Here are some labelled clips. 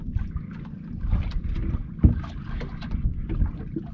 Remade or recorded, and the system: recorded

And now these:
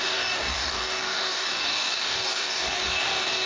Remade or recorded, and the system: remade, codec, DAC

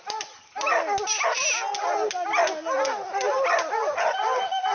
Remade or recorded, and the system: recorded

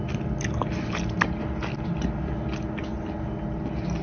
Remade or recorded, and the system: recorded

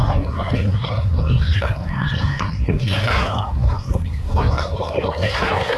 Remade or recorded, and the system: remade, codec, SNAC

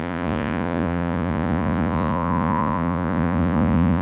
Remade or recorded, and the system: remade, vocoder, Vocos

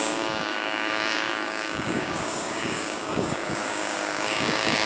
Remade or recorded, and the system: remade, codec, DAC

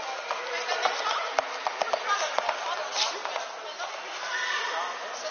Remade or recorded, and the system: recorded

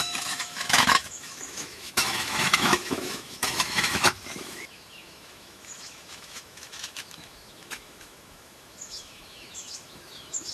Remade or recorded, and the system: remade, autoencoder, DAC-VAE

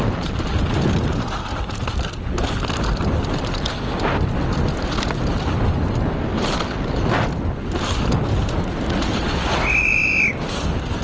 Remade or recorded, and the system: recorded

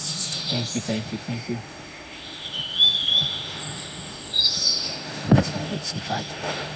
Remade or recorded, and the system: remade, autoencoder, DAC-VAE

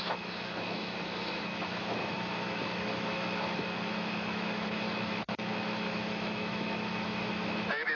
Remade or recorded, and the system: remade, autoencoder, DAC-VAE